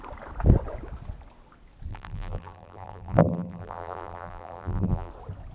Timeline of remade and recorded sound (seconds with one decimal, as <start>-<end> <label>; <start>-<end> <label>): 0.0-1.9 recorded; 1.9-5.1 remade; 5.1-5.5 recorded

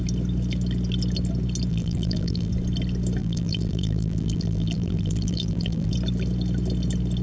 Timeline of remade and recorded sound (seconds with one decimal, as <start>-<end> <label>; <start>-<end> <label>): 0.0-1.7 recorded; 1.7-2.5 remade; 2.5-3.2 recorded; 3.2-5.9 remade; 5.9-7.2 recorded

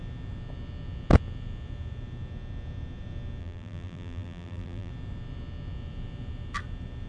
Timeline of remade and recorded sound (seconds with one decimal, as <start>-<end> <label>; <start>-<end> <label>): 0.0-3.4 recorded; 3.4-4.9 remade; 4.9-7.1 recorded

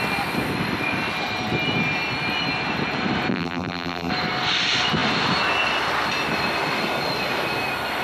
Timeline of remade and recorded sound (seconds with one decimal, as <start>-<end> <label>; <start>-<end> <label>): 0.0-3.3 recorded; 3.3-4.1 remade; 4.1-8.0 recorded

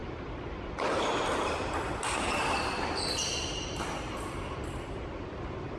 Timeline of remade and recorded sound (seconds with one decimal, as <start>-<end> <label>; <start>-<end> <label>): 0.0-1.0 remade; 1.0-5.8 recorded

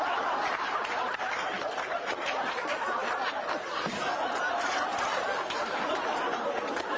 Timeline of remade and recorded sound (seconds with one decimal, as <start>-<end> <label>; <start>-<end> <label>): 0.0-3.0 recorded; 3.0-4.5 remade; 4.5-7.0 recorded

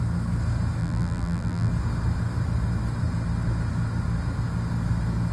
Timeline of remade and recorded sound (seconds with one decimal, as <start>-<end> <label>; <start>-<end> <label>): 0.0-0.8 recorded; 0.8-1.7 remade; 1.7-5.3 recorded